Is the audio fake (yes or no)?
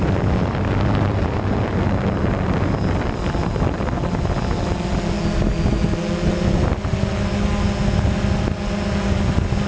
no